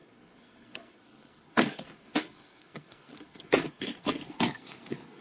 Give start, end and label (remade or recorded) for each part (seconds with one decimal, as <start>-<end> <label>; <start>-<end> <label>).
0.0-5.2 remade